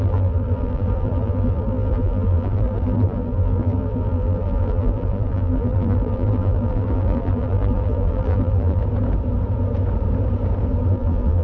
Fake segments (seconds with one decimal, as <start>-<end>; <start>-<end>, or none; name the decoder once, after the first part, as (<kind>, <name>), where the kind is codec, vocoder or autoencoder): 0.0-8.8 (vocoder, BigVGAN v2); 10.9-11.4